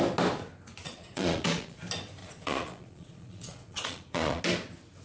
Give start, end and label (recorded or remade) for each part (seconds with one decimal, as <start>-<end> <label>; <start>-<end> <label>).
0.0-0.8 recorded; 0.8-1.8 remade; 1.8-2.2 recorded; 2.2-4.4 remade; 4.4-5.0 recorded